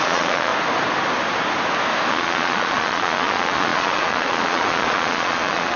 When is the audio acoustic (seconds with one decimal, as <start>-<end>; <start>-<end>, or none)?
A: 0.5-2.1